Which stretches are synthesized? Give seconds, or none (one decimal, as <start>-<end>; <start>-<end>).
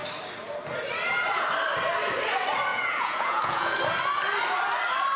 2.7-3.8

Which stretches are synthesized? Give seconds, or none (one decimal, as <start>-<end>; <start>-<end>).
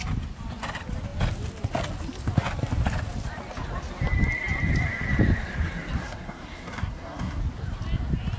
6.0-7.4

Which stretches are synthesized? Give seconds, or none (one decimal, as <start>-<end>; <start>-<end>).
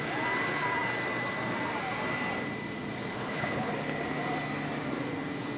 3.1-3.7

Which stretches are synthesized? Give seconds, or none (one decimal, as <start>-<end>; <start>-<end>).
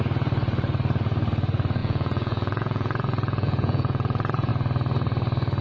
1.8-4.5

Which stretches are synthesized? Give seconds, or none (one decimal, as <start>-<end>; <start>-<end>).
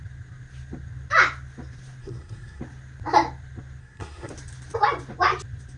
2.0-2.6; 3.8-4.3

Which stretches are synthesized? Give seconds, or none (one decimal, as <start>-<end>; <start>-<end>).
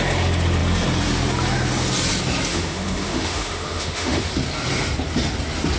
2.5-4.3